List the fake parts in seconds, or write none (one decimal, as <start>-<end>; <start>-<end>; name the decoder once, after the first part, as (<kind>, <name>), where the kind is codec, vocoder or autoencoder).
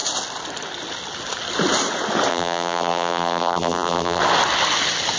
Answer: 2.3-4.2 (vocoder, BigVGAN v2)